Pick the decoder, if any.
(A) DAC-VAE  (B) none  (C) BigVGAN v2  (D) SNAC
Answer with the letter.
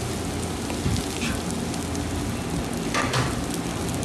B